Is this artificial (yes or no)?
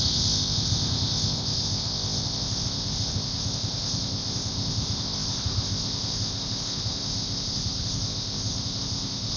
yes